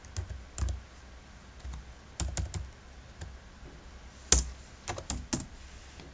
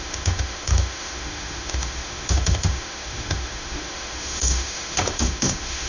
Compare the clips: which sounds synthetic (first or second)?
second